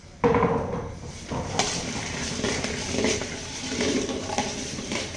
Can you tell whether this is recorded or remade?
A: remade